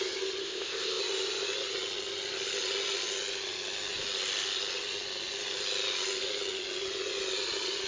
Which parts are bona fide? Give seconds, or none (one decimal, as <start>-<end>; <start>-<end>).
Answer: 0.0-0.4; 1.0-7.9